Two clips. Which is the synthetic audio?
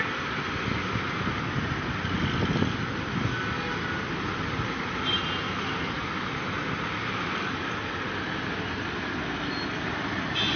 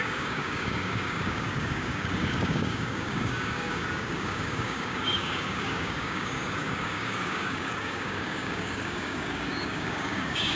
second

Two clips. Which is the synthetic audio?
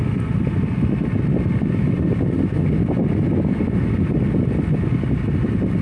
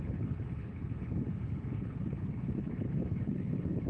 second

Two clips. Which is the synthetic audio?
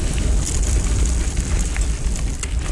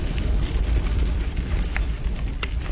first